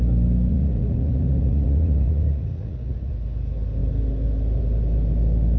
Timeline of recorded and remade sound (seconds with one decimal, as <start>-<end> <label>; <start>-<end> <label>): 0.0-0.5 recorded; 0.5-3.1 remade; 3.1-5.6 recorded